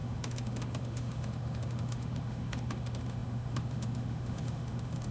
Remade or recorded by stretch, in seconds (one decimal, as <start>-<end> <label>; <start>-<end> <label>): 0.0-5.1 remade